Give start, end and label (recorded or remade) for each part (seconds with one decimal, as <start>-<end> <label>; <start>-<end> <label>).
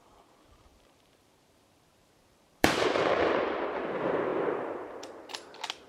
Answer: 0.0-0.7 recorded; 0.7-3.1 remade; 3.1-5.9 recorded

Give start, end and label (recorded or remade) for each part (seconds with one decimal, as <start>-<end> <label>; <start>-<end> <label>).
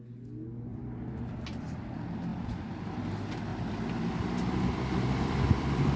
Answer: 0.0-0.7 recorded; 0.7-1.8 remade; 1.8-2.3 recorded; 2.3-2.8 remade; 2.8-3.5 recorded; 3.5-6.0 remade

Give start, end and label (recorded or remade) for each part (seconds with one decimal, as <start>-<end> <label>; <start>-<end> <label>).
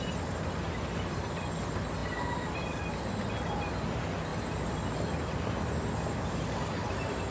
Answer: 0.0-2.0 recorded; 2.0-2.9 remade; 2.9-4.3 recorded; 4.3-5.5 remade; 5.5-7.3 recorded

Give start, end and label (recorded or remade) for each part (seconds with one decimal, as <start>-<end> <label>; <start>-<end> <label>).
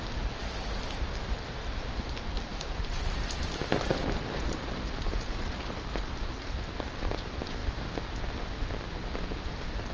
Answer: 0.0-2.5 recorded; 2.5-6.3 remade; 6.3-9.9 recorded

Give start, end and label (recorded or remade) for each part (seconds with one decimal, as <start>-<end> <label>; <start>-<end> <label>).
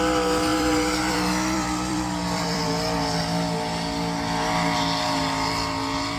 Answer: 0.0-0.5 recorded; 0.5-2.6 remade; 2.6-6.2 recorded